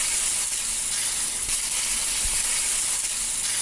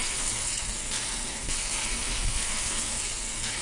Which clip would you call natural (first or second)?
first